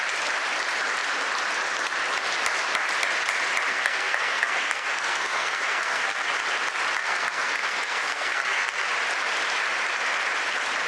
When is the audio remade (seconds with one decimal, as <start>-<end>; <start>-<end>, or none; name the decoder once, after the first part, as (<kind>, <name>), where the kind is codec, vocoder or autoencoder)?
3.7-6.3 (codec, SNAC); 7.0-8.9